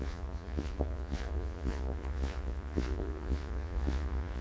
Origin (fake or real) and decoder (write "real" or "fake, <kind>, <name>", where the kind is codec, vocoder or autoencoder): fake, vocoder, Vocos